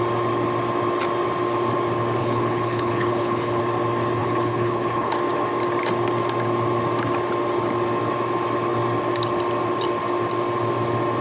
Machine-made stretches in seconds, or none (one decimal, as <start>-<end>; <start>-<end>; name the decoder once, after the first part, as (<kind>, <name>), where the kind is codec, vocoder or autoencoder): 2.2-3.6 (codec, HILCodec); 4.2-5.1